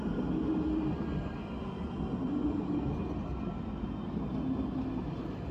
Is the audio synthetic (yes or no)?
no